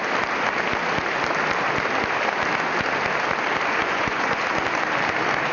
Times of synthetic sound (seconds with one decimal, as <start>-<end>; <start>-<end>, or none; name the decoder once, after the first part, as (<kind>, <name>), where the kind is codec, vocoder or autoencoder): 3.8-4.4 (vocoder, Vocos)